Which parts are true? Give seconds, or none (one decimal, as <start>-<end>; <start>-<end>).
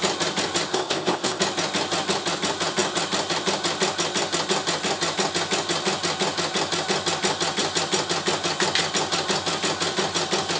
0.0-0.7; 1.4-10.6